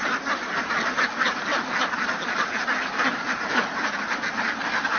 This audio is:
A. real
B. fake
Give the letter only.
A